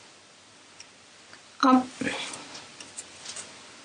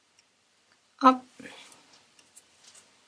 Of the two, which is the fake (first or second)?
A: second